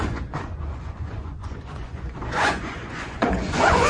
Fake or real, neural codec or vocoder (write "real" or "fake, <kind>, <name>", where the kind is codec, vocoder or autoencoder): fake, vocoder, Vocos